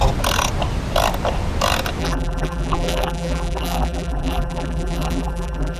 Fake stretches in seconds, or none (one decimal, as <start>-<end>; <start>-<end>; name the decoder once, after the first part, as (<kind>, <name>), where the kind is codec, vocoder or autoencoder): 2.0-5.8 (vocoder, BigVGAN v2)